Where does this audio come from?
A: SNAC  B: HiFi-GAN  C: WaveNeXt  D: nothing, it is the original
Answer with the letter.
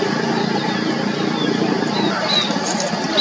D